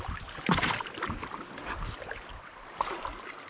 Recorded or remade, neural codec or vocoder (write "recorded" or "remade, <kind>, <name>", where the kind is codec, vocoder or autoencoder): recorded